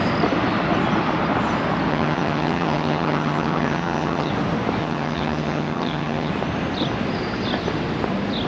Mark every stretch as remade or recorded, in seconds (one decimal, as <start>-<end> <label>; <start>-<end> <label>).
0.0-1.9 recorded; 1.9-4.3 remade; 4.3-4.8 recorded; 4.8-6.3 remade; 6.3-8.5 recorded